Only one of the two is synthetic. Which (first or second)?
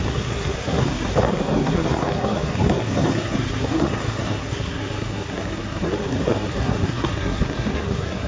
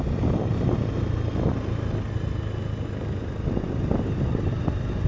first